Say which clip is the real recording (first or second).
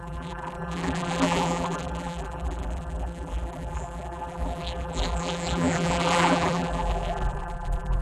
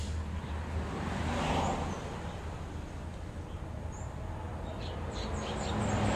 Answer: second